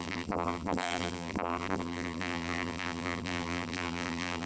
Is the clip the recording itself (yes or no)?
no